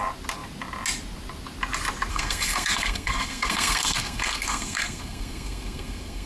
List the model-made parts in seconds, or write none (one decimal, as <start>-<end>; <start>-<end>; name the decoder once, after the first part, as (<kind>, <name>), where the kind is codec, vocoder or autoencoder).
2.1-6.3 (codec, SNAC)